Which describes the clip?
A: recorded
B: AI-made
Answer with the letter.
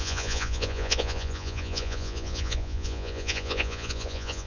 B